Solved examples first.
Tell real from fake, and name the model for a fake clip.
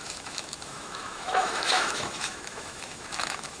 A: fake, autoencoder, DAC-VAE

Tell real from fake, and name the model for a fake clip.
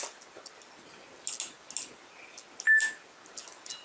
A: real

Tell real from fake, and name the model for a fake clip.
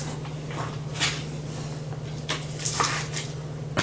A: real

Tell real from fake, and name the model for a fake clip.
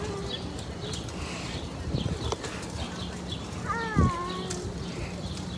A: real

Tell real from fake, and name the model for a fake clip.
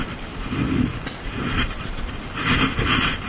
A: real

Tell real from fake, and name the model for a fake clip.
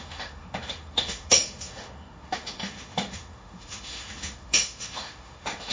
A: fake, autoencoder, DAC-VAE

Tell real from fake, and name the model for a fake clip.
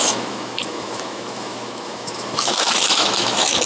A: fake, autoencoder, DAC-VAE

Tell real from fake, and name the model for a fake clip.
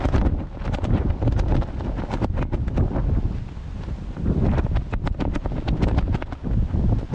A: real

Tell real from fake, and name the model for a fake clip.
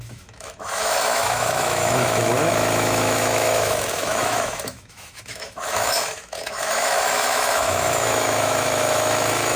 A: fake, autoencoder, DAC-VAE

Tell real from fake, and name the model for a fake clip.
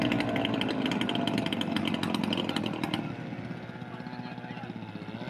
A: real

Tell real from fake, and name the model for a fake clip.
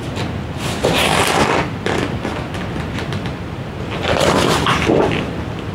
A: real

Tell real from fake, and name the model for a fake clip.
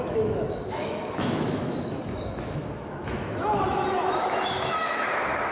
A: fake, autoencoder, DAC-VAE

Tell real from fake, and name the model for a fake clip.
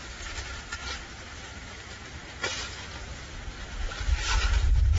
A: real